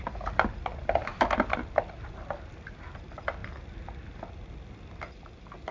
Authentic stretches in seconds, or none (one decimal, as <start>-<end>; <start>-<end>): 0.0-1.1; 2.3-5.7